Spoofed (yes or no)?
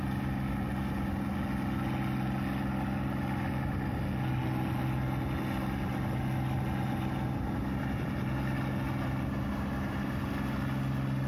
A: no